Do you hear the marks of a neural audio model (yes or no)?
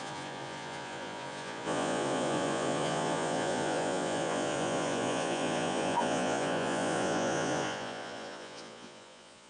yes